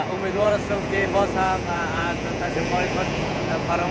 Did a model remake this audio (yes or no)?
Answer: yes